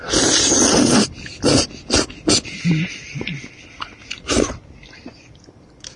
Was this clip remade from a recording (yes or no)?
no